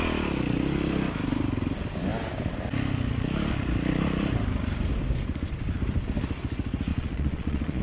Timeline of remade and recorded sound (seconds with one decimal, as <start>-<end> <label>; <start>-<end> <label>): 0.0-6.9 recorded; 6.9-7.8 remade